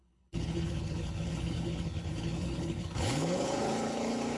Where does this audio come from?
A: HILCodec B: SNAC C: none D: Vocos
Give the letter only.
A